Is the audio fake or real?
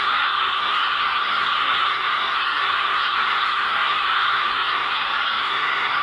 fake